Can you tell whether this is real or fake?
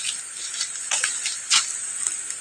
real